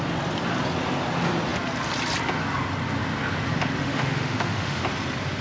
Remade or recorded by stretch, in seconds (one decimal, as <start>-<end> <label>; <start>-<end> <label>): 0.0-3.8 recorded; 3.8-4.8 remade; 4.8-5.4 recorded